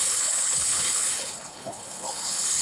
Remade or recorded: remade